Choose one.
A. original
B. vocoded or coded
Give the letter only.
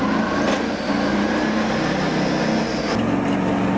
A